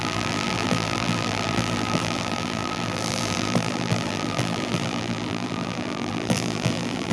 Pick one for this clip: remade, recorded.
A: remade